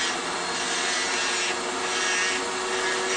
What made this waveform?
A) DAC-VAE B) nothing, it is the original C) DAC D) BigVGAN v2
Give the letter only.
B